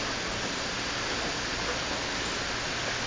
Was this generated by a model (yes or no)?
no